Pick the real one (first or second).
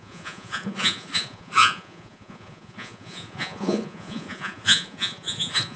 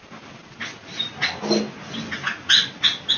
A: second